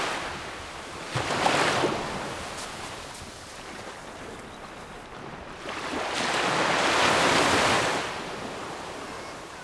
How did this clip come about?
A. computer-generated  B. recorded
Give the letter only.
B